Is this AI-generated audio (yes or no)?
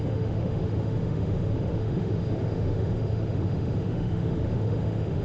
yes